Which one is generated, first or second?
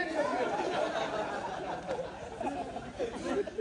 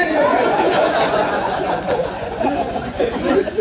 second